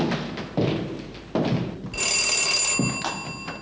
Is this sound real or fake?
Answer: real